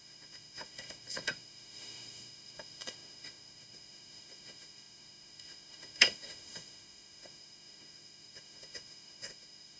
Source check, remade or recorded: remade